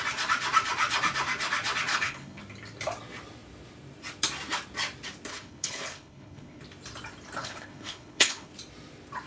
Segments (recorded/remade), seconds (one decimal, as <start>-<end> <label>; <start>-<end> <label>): 0.0-1.9 recorded; 1.9-2.4 remade; 2.4-5.3 recorded; 5.3-6.6 remade; 6.6-7.4 recorded; 7.4-8.5 remade; 8.5-9.3 recorded